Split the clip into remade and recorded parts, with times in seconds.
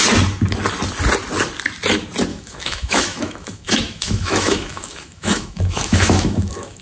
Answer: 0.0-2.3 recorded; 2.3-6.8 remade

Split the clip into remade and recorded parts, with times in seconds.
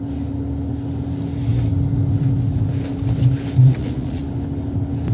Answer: 0.0-3.6 recorded; 3.6-4.2 remade; 4.2-5.1 recorded